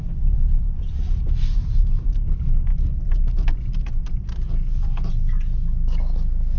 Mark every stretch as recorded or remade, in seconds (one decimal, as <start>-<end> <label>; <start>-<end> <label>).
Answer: 0.0-2.1 remade; 2.1-6.6 recorded